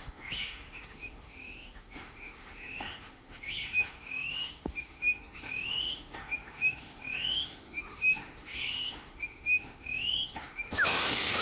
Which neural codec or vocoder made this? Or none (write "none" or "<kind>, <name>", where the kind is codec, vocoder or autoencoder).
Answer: autoencoder, DAC-VAE